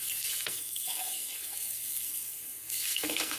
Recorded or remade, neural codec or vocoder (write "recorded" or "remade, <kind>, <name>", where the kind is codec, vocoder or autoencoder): remade, codec, SNAC